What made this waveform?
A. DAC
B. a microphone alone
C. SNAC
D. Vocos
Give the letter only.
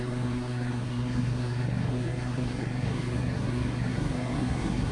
C